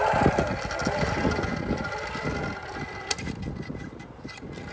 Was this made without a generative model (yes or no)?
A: yes